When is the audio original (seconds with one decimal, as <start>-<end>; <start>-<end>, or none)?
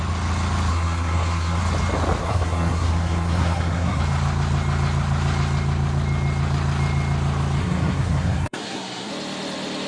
0.0-0.7; 1.6-2.2; 4.0-7.6; 9.1-9.9